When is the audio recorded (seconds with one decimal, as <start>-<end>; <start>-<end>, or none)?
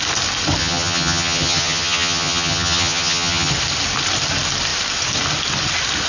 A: 0.0-0.6; 3.5-6.1